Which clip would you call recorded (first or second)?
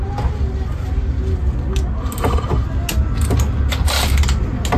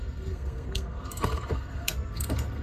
first